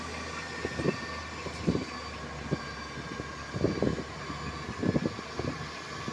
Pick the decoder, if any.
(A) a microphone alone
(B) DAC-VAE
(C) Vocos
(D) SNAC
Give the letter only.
A